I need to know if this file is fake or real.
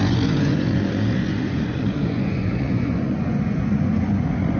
fake